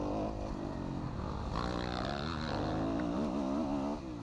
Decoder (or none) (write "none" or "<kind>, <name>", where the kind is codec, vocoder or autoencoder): none